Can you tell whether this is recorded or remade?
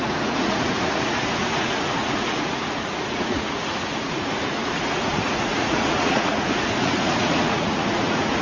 remade